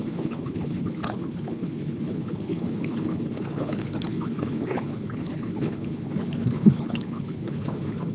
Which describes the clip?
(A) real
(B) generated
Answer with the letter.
B